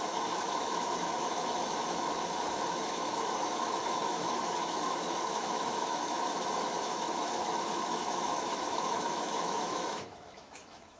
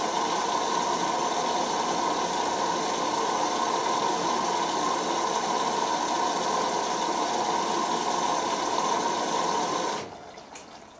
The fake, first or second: first